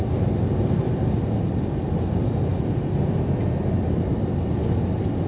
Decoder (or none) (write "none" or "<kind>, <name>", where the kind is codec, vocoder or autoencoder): none